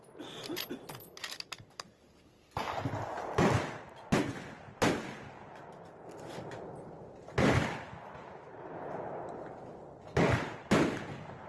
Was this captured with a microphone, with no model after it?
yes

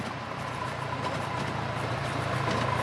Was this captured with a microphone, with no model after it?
yes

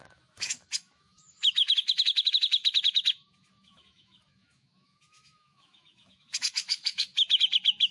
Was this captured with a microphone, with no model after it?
no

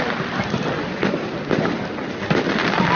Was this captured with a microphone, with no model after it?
yes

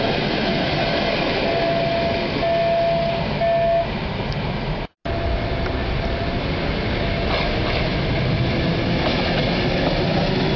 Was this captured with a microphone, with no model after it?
yes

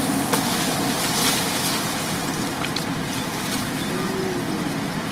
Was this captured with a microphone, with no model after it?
yes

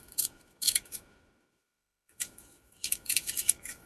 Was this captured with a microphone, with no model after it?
no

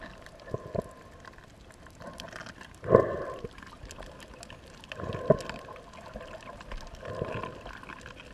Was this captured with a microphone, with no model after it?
yes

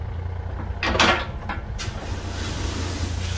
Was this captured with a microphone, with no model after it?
yes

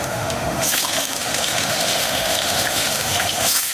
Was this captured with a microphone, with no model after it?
no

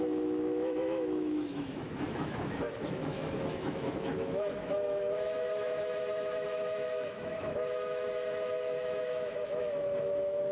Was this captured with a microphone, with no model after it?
no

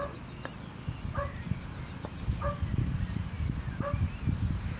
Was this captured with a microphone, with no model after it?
yes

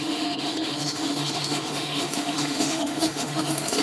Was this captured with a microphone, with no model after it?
no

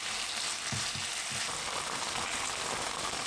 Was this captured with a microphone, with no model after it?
yes